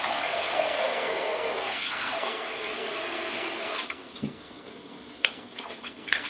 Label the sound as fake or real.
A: fake